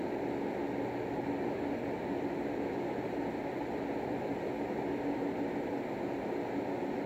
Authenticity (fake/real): real